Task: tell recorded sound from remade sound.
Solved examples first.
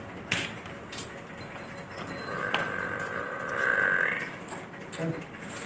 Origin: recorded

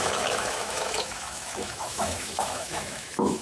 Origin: remade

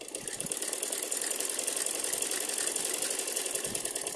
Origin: recorded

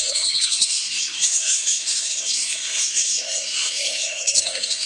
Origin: remade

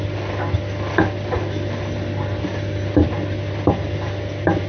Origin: recorded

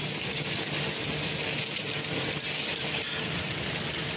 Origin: recorded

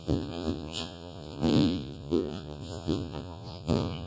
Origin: remade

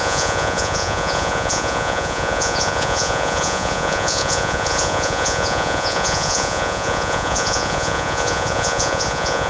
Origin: remade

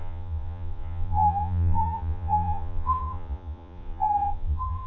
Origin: remade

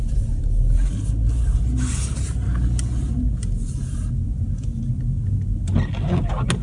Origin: recorded